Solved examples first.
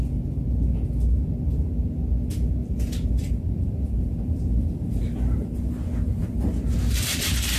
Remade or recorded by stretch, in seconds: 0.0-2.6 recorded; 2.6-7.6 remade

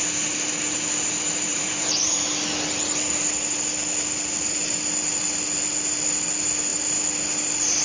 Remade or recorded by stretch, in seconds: 0.0-1.5 recorded; 1.5-2.3 remade; 2.3-7.8 recorded

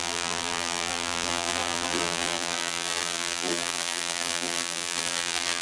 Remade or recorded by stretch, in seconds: 0.0-5.6 remade

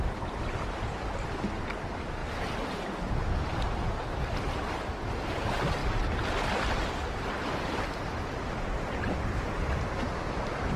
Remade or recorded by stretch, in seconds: 0.0-10.8 recorded

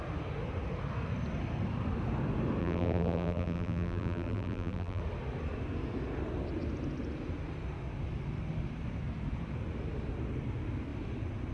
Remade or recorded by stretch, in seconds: 0.0-2.6 recorded; 2.6-5.0 remade; 5.0-11.5 recorded

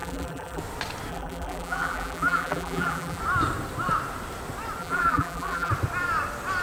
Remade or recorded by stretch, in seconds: 0.0-0.6 remade; 0.6-1.1 recorded; 1.1-3.2 remade; 3.2-4.8 recorded; 4.8-5.7 remade; 5.7-6.6 recorded

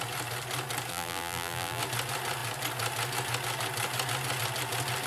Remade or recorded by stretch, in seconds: 0.0-0.9 recorded; 0.9-1.8 remade; 1.8-5.1 recorded

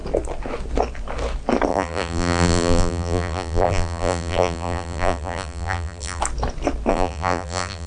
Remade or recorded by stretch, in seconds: 0.0-1.7 recorded; 1.7-6.2 remade; 6.2-6.9 recorded; 6.9-7.9 remade